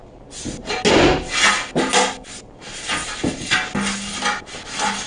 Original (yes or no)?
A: yes